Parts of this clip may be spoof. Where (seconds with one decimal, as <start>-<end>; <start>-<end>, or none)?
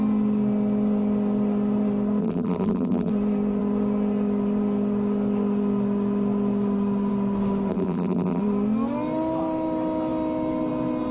2.2-3.1; 7.7-8.4